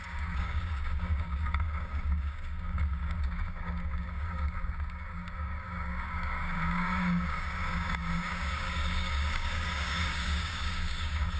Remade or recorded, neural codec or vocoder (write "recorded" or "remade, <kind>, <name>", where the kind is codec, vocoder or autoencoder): remade, codec, DAC